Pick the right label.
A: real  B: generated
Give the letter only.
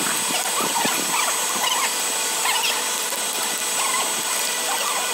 A